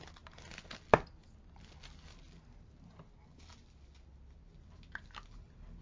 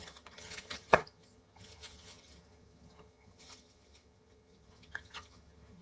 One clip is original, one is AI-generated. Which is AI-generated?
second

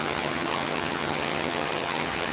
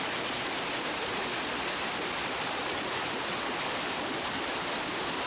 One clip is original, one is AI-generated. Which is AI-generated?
first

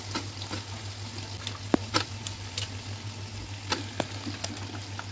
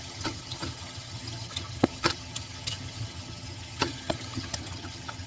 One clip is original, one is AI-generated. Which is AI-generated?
second